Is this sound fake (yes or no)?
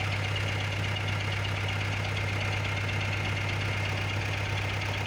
no